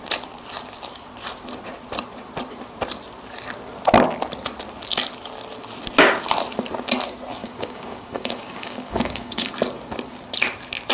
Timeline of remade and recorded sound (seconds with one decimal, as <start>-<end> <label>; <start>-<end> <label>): 0.0-7.4 recorded; 7.4-9.5 remade; 9.5-10.9 recorded